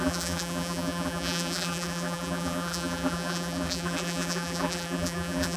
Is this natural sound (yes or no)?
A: no